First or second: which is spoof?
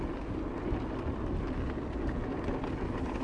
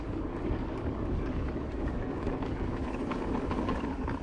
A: second